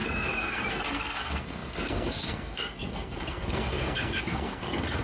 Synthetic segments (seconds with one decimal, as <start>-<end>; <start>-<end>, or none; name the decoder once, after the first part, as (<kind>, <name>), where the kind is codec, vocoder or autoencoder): 0.0-5.0 (codec, SNAC)